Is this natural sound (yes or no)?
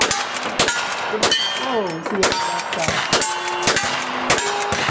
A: yes